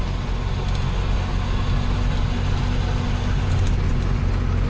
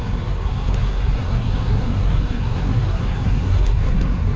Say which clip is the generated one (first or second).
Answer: second